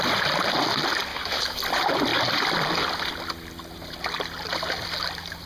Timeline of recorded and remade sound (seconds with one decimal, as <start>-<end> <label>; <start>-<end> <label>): 0.0-1.1 recorded; 1.1-1.6 remade; 1.6-5.5 recorded